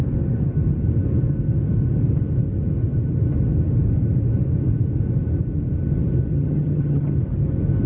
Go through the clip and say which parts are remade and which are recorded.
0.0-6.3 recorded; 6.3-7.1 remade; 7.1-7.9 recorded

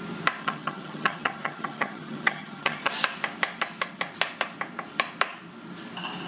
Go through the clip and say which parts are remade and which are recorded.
0.0-0.4 recorded; 0.4-2.9 remade; 2.9-6.3 recorded

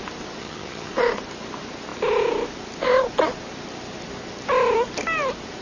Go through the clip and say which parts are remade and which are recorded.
0.0-0.4 recorded; 0.4-0.9 remade; 0.9-5.6 recorded

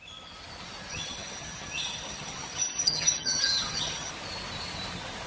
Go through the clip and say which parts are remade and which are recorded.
0.0-0.9 recorded; 0.9-4.1 remade; 4.1-5.3 recorded